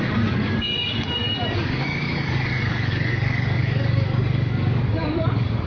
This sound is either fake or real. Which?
fake